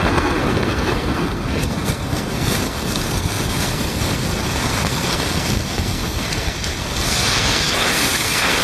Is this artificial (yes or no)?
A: yes